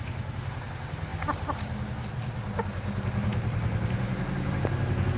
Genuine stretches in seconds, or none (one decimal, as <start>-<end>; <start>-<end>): 0.0-5.2